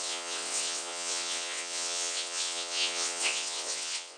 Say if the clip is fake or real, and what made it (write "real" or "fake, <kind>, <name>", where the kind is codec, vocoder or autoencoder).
fake, vocoder, WaveNeXt